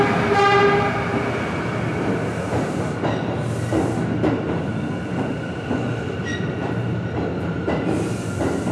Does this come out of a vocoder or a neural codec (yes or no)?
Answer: no